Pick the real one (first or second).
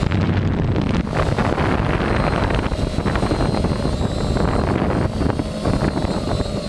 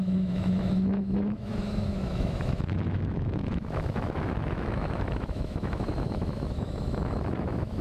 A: first